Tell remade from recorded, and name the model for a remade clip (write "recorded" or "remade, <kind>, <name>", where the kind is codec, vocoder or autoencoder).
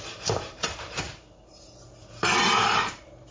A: remade, vocoder, BigVGAN v2